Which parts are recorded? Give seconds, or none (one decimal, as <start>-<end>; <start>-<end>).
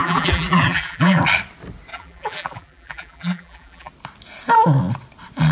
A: 1.2-1.9; 3.9-5.5